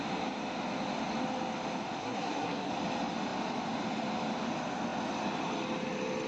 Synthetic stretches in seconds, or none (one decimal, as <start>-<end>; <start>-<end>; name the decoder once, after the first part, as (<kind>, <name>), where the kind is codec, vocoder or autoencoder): 2.0-2.7 (codec, SNAC)